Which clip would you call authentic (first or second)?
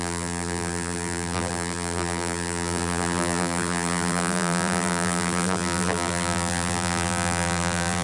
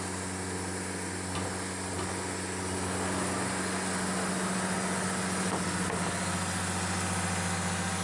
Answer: second